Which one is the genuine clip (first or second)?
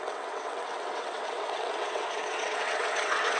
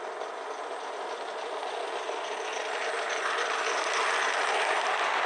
second